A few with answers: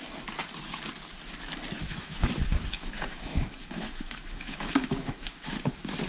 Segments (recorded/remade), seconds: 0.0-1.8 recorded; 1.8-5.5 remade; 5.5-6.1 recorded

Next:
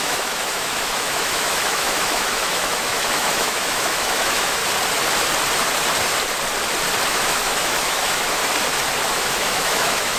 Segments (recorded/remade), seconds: 0.0-4.6 remade; 4.6-7.1 recorded; 7.1-8.4 remade; 8.4-9.1 recorded; 9.1-10.2 remade

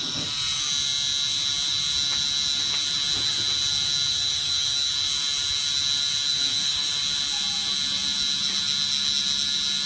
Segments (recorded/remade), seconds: 0.0-4.1 recorded; 4.1-4.9 remade; 4.9-6.3 recorded; 6.3-6.9 remade; 6.9-9.9 recorded

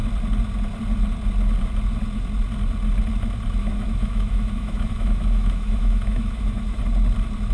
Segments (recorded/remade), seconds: 0.0-3.6 recorded; 3.6-6.8 remade; 6.8-7.5 recorded

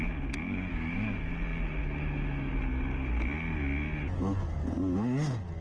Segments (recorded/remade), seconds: 0.0-0.7 recorded; 0.7-1.3 remade; 1.3-1.8 recorded; 1.8-2.5 remade; 2.5-5.6 recorded

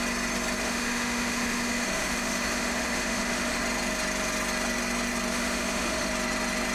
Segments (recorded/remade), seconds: 0.0-0.6 recorded; 0.6-3.6 remade; 3.6-5.3 recorded; 5.3-6.1 remade; 6.1-6.7 recorded

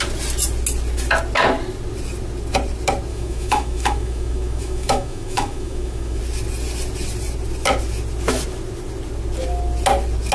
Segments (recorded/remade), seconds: 0.0-3.1 recorded; 3.1-6.2 remade; 6.2-10.3 recorded